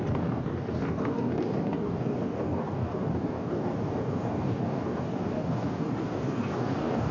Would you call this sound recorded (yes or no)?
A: no